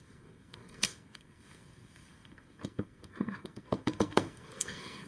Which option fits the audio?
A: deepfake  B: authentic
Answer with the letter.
A